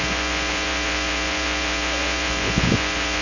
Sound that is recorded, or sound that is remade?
remade